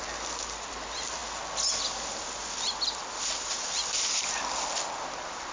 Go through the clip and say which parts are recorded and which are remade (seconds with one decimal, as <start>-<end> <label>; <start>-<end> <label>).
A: 0.0-5.5 recorded